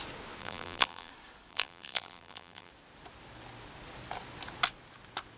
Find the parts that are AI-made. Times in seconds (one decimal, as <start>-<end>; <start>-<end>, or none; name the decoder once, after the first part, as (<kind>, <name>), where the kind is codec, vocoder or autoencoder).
0.4-1.1 (vocoder, BigVGAN v2); 1.5-2.7